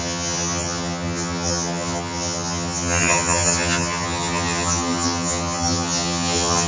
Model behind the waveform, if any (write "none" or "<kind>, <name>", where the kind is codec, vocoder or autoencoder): vocoder, HiFi-GAN